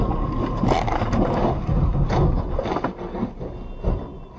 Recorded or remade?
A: recorded